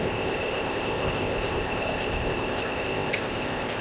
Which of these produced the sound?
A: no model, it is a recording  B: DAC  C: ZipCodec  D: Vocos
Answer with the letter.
C